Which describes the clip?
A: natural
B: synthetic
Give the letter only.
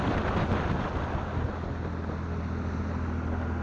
A